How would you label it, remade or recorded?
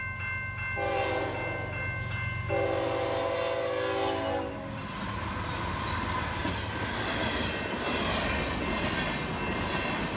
recorded